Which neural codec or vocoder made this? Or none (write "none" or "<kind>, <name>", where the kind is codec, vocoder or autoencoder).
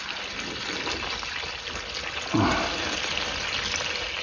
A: none